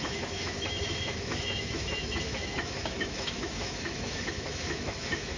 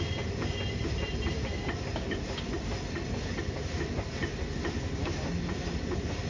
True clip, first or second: second